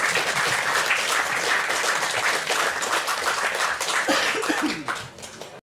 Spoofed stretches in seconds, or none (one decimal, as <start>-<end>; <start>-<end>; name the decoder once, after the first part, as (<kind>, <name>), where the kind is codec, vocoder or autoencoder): none